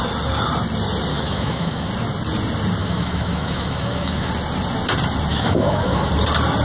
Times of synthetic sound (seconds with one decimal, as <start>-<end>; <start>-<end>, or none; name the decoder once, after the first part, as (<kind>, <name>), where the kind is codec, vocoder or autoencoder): 1.1-1.9 (autoencoder, DAC-VAE); 2.8-4.3; 5.3-6.1

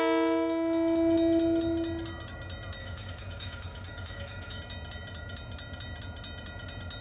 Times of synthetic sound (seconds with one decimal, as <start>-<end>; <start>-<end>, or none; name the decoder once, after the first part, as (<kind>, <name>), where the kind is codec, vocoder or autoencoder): 2.8-4.6 (autoencoder, DAC-VAE)

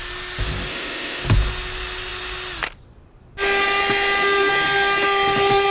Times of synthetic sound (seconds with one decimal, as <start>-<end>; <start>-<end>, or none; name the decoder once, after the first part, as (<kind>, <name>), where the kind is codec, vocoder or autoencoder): 0.7-1.2 (autoencoder, DAC-VAE)

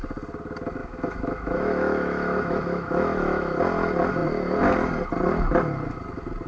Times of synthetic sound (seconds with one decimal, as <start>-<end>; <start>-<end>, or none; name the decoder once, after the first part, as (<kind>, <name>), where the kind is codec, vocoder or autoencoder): 0.8-3.6 (autoencoder, DAC-VAE)